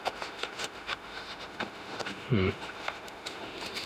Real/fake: fake